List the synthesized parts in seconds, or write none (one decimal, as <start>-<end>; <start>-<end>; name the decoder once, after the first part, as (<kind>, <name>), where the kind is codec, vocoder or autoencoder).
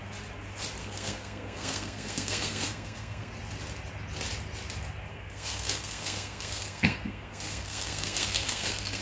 0.8-3.3 (codec, SNAC); 5.1-9.0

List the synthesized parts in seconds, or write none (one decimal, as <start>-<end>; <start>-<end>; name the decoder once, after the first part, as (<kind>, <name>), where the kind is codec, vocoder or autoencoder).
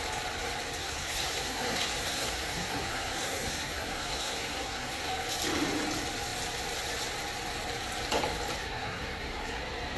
0.8-5.1 (codec, SNAC); 8.6-9.6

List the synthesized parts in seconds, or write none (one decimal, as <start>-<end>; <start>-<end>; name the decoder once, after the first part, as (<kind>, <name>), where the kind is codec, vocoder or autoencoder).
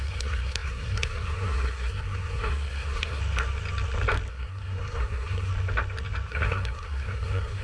0.0-3.2 (codec, SNAC); 4.3-5.5; 6.3-7.6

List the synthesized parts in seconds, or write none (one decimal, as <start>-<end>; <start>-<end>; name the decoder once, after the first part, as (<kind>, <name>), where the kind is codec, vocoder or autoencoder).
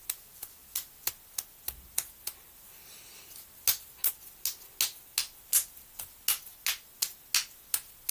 none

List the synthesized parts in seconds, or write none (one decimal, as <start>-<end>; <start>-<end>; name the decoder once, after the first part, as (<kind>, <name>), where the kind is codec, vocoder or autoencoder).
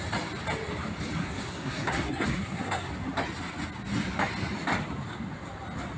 1.2-2.9 (codec, SNAC)